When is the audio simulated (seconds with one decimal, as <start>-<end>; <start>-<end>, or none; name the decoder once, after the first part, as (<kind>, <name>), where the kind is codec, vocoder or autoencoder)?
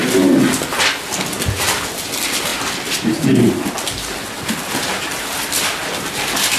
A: none